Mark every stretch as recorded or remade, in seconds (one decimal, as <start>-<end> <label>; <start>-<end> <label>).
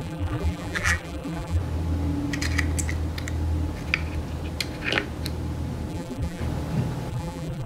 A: 0.0-1.6 remade; 1.6-5.9 recorded; 5.9-6.4 remade; 6.4-7.1 recorded; 7.1-7.7 remade